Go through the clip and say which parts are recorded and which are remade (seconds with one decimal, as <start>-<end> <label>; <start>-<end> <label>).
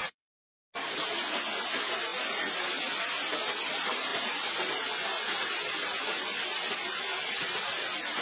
0.0-8.2 recorded